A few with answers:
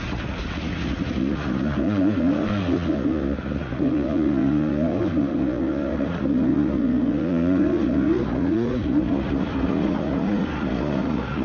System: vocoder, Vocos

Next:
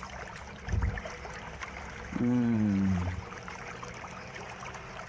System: vocoder, BigVGAN v2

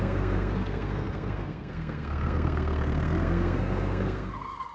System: codec, SNAC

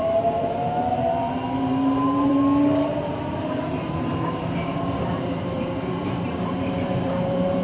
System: vocoder, BigVGAN v2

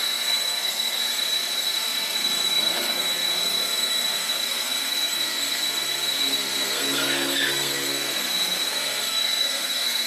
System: codec, SNAC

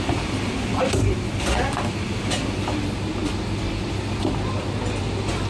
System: none